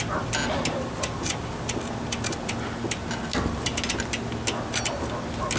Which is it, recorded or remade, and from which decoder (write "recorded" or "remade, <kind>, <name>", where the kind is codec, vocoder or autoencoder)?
recorded